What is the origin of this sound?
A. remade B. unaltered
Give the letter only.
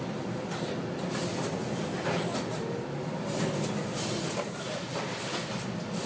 B